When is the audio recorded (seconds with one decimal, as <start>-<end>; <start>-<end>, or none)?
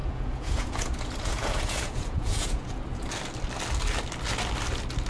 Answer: 3.1-5.1